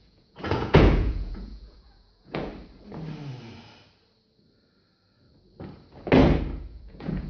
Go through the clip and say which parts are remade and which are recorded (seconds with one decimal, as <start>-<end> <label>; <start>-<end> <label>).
0.0-2.5 remade; 2.5-6.7 recorded; 6.7-7.3 remade